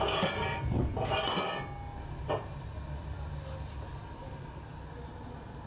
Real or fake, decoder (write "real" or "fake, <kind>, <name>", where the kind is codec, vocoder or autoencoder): real